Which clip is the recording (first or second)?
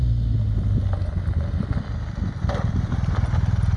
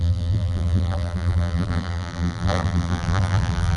first